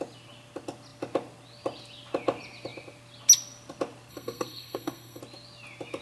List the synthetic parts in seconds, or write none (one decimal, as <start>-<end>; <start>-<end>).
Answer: 4.1-5.2